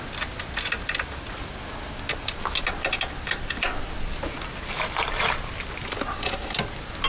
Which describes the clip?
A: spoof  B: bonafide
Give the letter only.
B